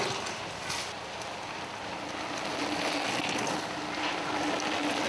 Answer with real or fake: real